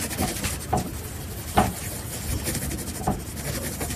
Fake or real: real